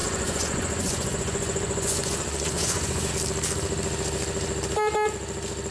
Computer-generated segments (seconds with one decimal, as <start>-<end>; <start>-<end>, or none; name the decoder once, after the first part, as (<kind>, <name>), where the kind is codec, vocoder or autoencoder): 0.0-3.1 (vocoder, Vocos)